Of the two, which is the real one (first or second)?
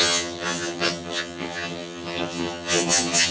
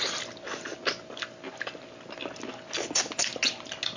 second